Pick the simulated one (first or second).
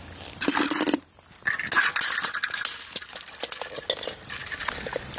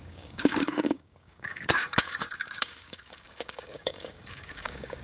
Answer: second